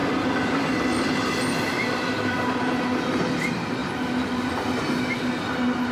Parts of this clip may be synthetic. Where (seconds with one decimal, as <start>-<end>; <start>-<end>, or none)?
none

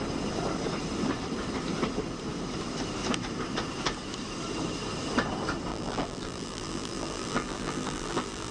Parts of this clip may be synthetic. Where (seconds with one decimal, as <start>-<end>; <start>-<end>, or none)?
5.7-8.5

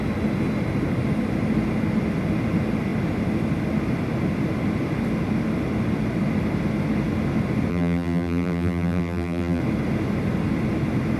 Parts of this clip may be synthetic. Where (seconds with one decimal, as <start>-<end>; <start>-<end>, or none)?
7.7-9.6